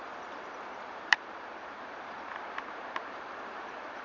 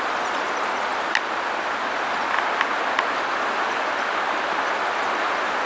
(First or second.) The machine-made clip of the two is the first